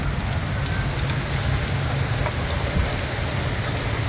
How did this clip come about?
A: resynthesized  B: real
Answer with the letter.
B